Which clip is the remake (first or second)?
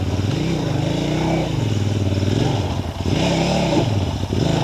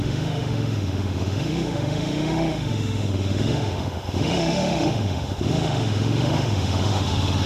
second